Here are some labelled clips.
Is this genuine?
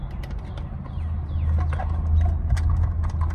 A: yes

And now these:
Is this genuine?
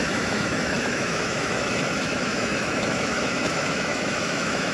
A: no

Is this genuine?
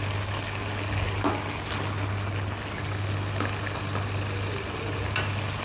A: yes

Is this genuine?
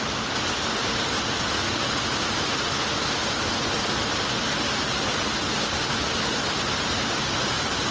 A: yes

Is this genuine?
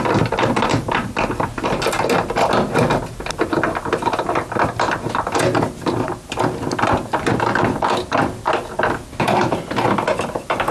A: yes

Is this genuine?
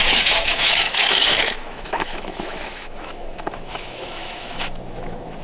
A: no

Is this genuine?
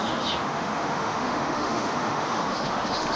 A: no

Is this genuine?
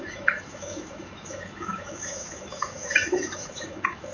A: no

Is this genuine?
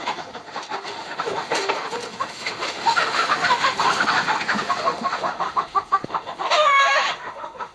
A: no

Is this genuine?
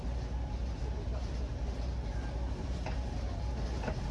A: yes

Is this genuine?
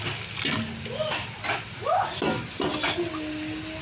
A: yes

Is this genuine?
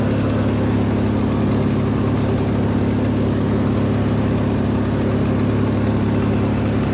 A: yes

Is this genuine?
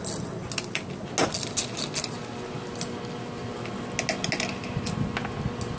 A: yes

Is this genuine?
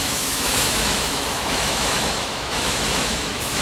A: no